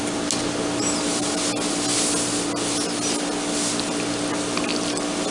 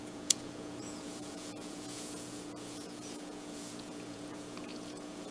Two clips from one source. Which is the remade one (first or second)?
second